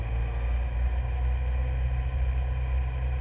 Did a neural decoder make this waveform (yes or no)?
no